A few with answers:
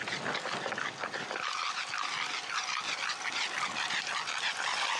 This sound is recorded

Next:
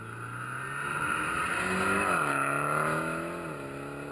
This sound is recorded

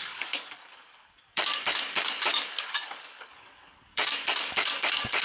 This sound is remade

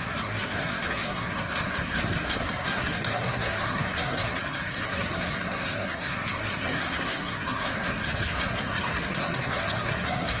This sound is remade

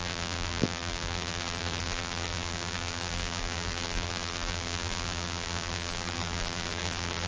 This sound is remade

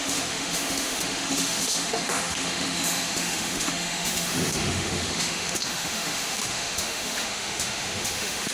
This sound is remade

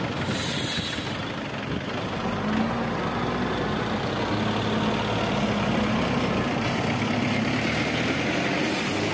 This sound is recorded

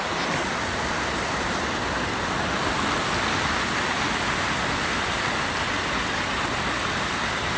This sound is recorded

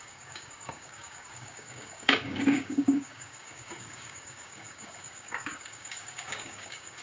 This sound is remade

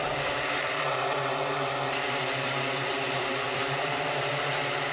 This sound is remade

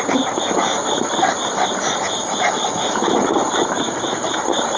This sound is recorded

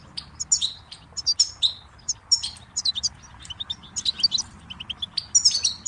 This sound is recorded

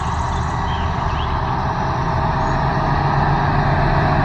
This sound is recorded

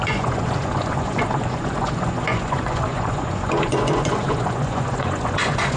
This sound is remade